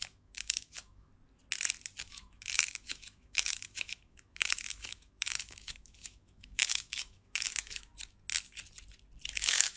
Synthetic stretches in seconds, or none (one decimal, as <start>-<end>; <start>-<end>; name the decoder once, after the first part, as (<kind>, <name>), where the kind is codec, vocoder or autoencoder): 0.0-1.1 (autoencoder, DAC-VAE); 2.0-7.9; 9.3-9.8